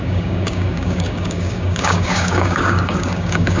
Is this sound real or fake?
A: fake